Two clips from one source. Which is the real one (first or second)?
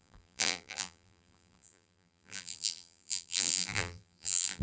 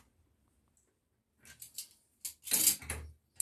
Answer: second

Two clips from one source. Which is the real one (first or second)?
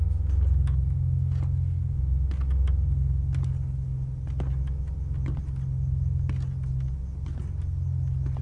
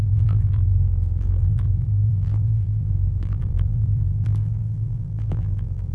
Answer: first